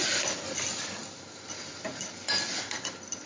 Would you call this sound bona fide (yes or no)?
yes